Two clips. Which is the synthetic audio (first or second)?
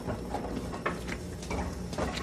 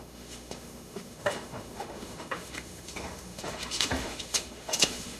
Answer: second